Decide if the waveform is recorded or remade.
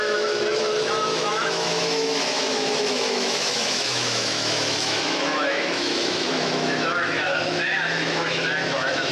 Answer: remade